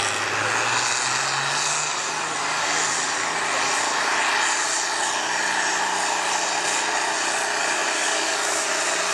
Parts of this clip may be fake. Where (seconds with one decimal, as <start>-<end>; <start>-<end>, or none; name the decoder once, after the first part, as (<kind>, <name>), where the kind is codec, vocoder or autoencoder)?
7.6-8.7 (codec, DAC)